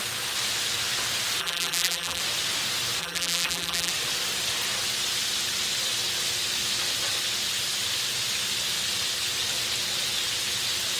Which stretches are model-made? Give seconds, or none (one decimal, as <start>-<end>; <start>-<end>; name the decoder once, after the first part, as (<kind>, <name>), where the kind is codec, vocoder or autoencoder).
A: 1.4-2.2 (vocoder, BigVGAN v2); 3.0-3.9

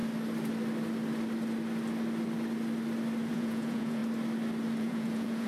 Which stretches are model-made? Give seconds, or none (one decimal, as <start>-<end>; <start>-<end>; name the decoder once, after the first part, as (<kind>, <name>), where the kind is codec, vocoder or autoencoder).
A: 3.3-4.0 (vocoder, Vocos); 4.8-5.5

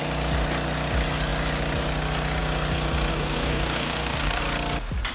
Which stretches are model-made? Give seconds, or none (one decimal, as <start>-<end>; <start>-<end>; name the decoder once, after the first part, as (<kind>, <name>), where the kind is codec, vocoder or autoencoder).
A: 3.1-4.4 (codec, DAC)

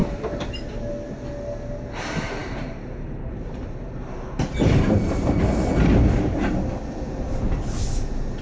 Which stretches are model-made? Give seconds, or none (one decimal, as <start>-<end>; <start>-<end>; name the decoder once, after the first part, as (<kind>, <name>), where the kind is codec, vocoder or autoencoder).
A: 0.0-0.6 (vocoder, BigVGAN v2); 2.4-5.7

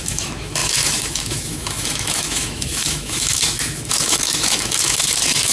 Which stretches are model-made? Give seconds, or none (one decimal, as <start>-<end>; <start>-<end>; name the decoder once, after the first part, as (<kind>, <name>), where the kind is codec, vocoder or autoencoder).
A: 0.0-5.5 (autoencoder, DAC-VAE)